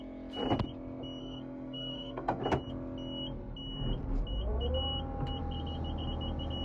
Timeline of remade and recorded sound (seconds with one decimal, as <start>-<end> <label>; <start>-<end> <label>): 0.0-1.2 recorded; 1.2-2.4 remade; 2.4-6.6 recorded